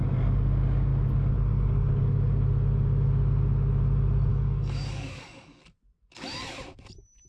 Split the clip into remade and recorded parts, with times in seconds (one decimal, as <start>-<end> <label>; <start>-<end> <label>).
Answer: 0.0-4.3 recorded; 4.3-5.6 remade; 5.6-7.3 recorded